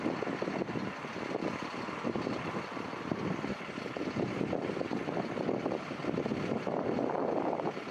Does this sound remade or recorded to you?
recorded